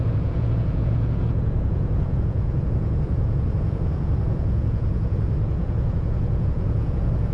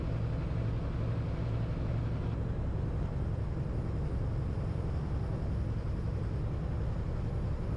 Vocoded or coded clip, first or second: first